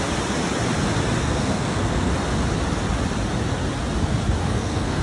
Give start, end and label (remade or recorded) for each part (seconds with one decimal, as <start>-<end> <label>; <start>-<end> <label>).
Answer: 0.0-1.2 recorded; 1.2-2.1 remade; 2.1-4.4 recorded; 4.4-5.0 remade

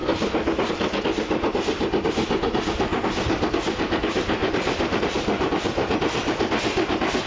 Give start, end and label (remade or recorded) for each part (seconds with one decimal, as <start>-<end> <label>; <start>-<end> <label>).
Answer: 0.0-7.3 recorded

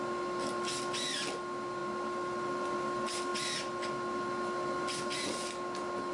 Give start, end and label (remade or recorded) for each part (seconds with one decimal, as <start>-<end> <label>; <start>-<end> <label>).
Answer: 0.0-6.1 recorded

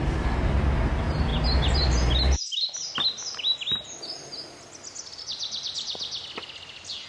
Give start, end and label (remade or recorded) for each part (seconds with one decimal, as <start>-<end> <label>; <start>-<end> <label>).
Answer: 0.0-7.1 recorded

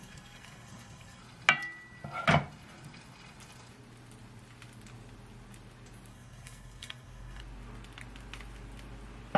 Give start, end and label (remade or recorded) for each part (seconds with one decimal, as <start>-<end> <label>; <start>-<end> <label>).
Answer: 0.0-1.2 remade; 1.2-6.1 recorded; 6.1-7.4 remade; 7.4-9.4 recorded